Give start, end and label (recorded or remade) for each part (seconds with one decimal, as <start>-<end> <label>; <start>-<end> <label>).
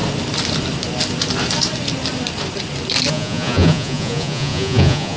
0.0-3.1 recorded; 3.1-5.2 remade